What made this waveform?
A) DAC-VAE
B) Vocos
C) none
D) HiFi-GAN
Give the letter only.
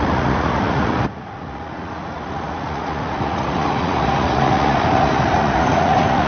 B